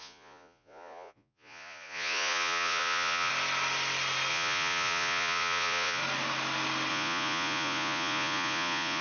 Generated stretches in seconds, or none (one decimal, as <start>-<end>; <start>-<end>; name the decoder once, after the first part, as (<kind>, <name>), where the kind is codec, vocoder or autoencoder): 0.0-3.3 (vocoder, Vocos); 4.3-6.0; 6.9-9.0